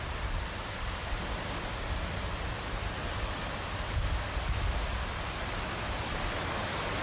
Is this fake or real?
real